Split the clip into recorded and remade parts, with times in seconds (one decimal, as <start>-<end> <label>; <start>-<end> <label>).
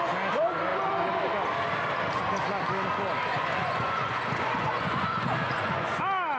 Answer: 0.0-3.3 recorded; 3.3-6.0 remade; 6.0-6.4 recorded